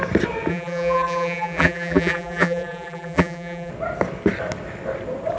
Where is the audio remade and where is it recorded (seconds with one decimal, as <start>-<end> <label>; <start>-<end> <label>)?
0.0-0.5 recorded; 0.5-3.7 remade; 3.7-5.4 recorded